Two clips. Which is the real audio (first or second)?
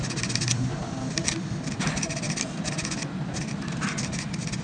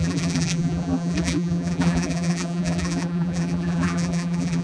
first